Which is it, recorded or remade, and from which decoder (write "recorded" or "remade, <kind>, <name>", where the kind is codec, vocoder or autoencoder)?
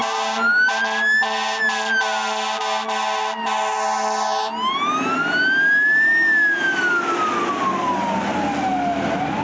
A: recorded